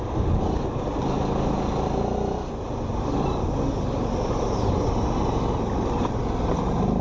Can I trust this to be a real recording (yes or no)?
yes